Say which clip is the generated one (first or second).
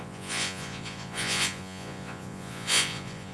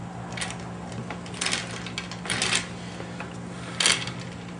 first